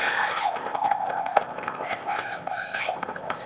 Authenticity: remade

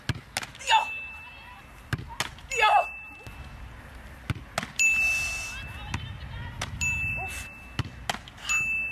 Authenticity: recorded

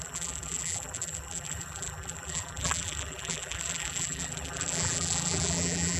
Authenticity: remade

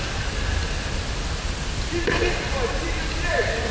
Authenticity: recorded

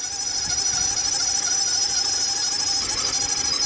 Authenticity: recorded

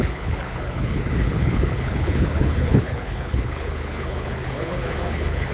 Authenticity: remade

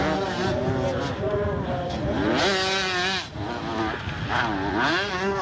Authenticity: recorded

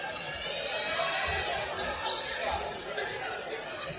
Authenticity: recorded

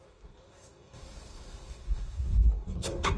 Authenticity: remade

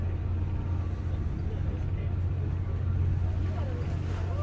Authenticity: recorded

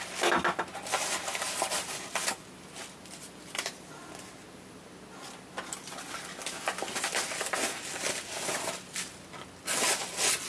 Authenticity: recorded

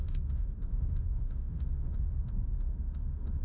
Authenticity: remade